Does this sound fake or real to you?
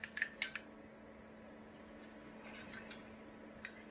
real